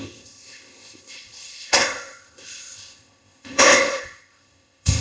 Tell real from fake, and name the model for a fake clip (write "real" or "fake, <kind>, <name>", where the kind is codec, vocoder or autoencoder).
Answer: fake, codec, ZipCodec